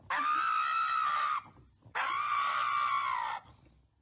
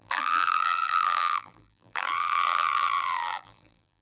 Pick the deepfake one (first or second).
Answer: second